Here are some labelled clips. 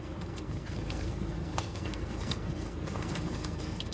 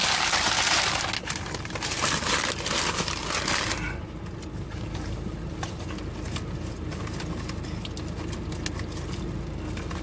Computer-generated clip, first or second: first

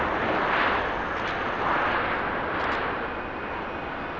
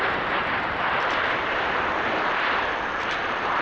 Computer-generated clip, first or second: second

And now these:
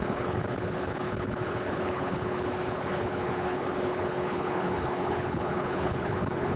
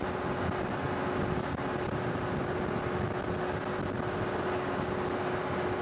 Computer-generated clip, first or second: first